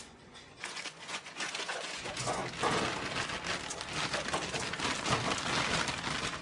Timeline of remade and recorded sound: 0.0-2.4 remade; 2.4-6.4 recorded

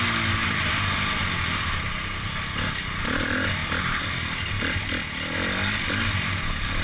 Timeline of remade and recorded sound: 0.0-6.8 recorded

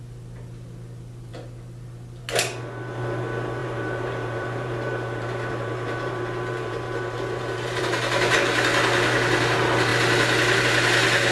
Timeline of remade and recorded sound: 0.0-3.6 recorded; 3.6-7.8 remade; 7.8-11.3 recorded